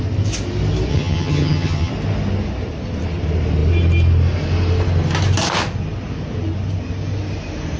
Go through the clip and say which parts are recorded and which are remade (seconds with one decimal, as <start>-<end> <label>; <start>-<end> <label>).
0.0-0.9 recorded; 0.9-1.9 remade; 1.9-7.8 recorded